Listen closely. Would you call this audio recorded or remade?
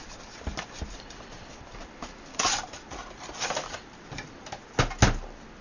recorded